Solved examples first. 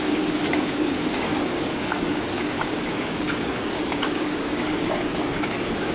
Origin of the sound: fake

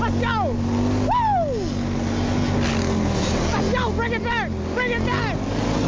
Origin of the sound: real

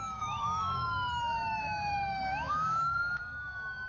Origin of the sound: fake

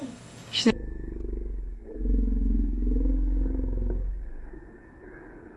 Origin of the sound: fake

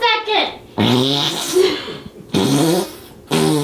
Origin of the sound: real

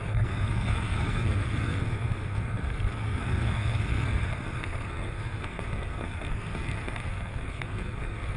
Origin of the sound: fake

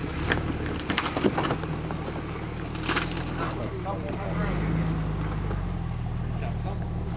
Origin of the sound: real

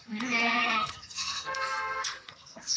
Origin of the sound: fake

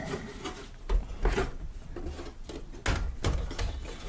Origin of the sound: real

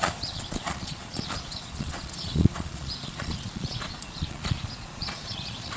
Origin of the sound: fake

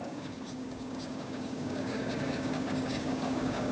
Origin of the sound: fake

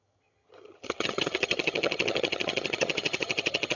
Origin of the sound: fake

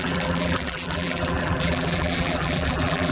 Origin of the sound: fake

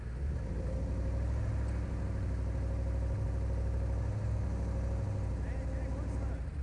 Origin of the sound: real